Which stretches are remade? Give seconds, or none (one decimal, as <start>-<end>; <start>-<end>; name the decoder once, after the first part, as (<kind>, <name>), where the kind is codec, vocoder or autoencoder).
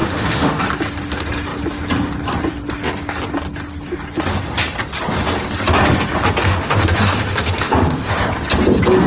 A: 0.0-0.6 (autoencoder, DAC-VAE); 6.4-8.2